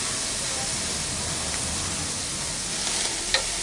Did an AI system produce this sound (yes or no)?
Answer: no